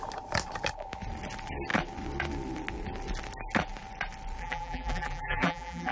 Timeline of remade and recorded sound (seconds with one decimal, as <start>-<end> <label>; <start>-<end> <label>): 0.0-4.4 recorded; 4.4-5.9 remade